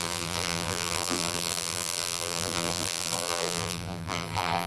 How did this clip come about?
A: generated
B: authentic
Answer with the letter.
A